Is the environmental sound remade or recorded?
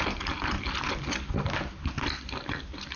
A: recorded